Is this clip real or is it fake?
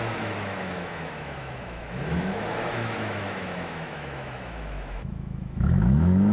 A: fake